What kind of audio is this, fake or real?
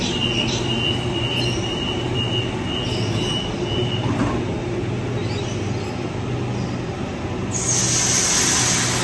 real